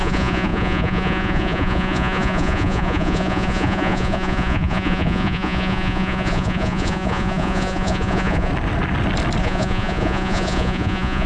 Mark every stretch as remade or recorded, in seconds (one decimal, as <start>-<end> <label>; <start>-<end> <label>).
0.0-8.5 remade; 8.5-9.4 recorded; 9.4-11.3 remade